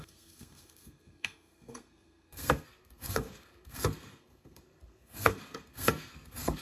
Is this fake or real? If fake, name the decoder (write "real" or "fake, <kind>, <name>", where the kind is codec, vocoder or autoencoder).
fake, codec, SNAC